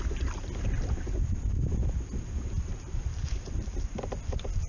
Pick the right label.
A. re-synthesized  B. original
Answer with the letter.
A